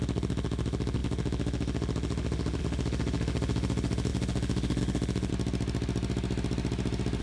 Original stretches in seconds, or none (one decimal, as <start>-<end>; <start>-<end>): 5.3-7.2